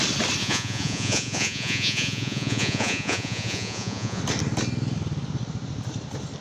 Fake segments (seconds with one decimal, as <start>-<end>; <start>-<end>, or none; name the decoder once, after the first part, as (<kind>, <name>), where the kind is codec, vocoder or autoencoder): 0.4-4.2 (vocoder, Vocos)